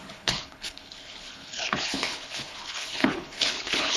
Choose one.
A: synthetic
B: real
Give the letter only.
A